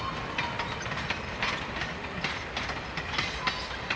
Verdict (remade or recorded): recorded